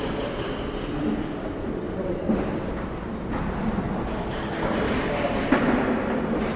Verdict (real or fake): real